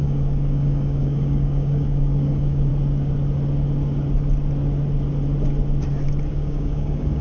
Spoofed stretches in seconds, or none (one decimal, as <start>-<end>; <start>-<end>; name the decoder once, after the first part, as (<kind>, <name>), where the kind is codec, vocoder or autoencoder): 0.0-2.7 (codec, DAC); 6.3-7.2